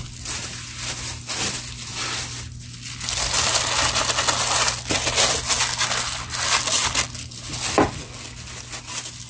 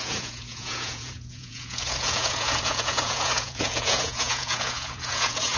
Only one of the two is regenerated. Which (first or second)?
second